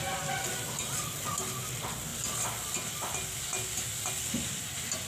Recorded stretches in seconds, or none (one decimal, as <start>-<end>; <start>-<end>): 0.0-5.1